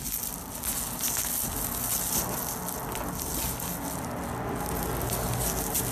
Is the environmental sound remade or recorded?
recorded